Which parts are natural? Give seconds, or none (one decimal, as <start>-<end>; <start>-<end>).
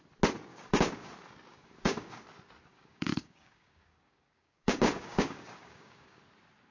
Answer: 0.0-0.5; 1.1-1.5; 2.2-2.7; 6.2-6.7